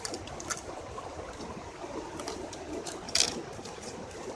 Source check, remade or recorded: recorded